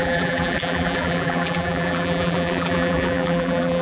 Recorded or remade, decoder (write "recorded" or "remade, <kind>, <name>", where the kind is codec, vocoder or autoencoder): remade, vocoder, BigVGAN v2